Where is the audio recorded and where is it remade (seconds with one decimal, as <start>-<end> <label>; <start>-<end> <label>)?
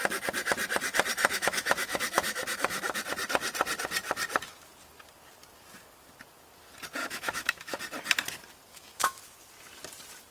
0.0-1.2 recorded; 1.2-3.0 remade; 3.0-7.0 recorded; 7.0-7.8 remade; 7.8-8.7 recorded; 8.7-9.2 remade; 9.2-10.3 recorded